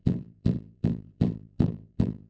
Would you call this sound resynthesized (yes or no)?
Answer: yes